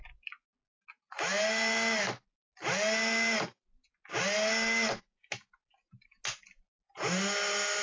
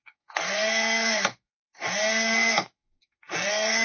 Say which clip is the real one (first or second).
first